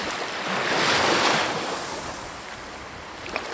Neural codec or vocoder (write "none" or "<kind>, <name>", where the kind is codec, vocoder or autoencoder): none